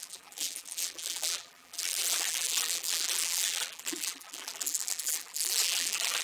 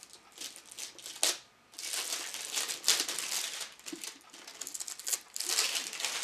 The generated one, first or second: first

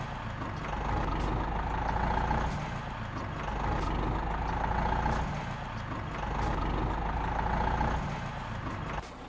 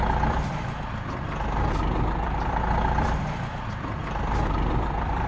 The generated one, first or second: second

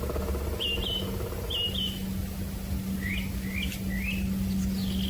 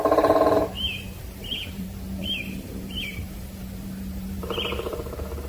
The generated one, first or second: second